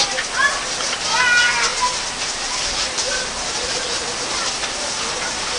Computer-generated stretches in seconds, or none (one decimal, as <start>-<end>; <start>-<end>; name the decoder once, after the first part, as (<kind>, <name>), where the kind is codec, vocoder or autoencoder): none